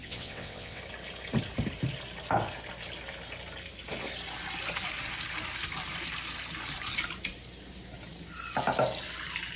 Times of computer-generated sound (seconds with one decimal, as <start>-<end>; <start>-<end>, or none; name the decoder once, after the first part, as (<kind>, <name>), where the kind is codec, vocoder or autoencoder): 0.0-0.8 (vocoder, WaveNeXt)